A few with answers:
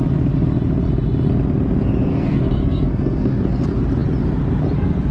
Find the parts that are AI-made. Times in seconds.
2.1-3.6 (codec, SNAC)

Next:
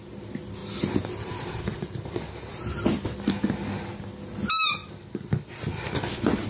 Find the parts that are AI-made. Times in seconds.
0.6-2.6 (vocoder, BigVGAN v2); 4.8-5.6

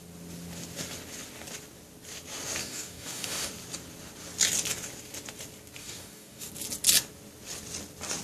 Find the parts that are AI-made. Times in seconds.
2.6-3.5 (codec, DAC); 5.8-6.5

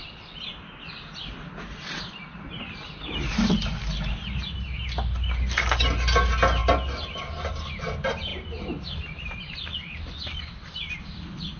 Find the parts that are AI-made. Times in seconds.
none